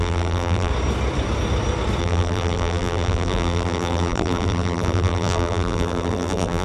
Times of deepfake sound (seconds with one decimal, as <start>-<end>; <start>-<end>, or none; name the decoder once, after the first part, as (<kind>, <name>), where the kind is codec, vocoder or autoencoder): 0.0-0.7 (vocoder, BigVGAN v2); 2.0-6.6